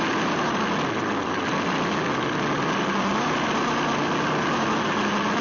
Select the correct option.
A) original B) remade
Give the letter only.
A